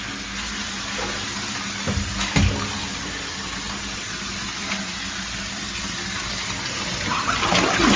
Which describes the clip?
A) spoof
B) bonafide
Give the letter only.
B